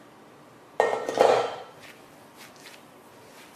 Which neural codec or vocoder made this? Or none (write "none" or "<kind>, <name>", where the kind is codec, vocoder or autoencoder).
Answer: none